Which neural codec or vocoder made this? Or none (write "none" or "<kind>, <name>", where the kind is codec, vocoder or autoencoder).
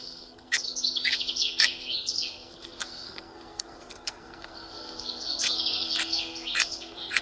codec, SNAC